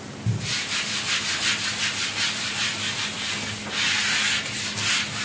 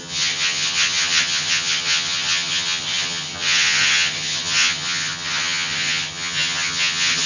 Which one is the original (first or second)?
first